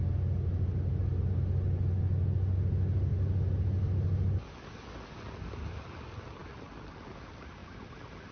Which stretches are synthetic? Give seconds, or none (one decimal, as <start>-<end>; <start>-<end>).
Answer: none